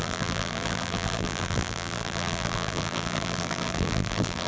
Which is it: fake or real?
fake